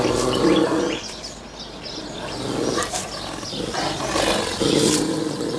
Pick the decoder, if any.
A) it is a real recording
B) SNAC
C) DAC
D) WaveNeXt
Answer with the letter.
A